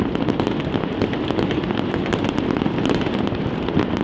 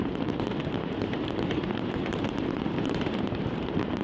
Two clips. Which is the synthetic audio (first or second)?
second